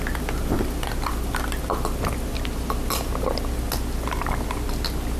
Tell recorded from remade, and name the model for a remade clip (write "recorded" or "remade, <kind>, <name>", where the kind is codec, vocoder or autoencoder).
recorded